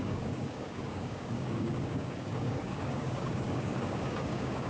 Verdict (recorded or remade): remade